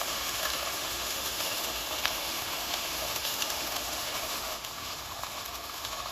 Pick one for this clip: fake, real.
fake